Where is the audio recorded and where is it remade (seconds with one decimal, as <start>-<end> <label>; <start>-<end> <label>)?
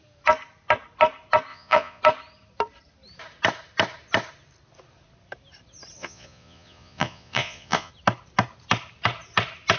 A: 0.0-1.5 recorded; 1.5-2.0 remade; 2.0-6.0 recorded; 6.0-7.9 remade; 7.9-9.8 recorded